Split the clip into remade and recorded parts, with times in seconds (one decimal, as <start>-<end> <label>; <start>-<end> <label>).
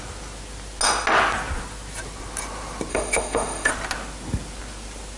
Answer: 0.0-2.9 recorded; 2.9-3.7 remade; 3.7-5.2 recorded